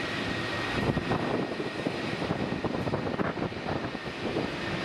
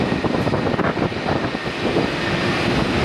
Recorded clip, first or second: second